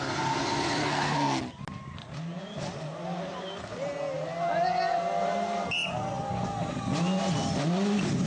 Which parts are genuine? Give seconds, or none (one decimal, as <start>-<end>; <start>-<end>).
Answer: 0.0-0.8; 1.4-8.3